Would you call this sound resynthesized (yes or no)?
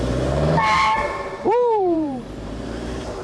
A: yes